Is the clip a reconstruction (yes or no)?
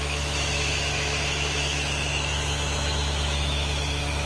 yes